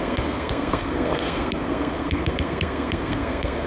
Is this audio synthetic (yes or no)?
yes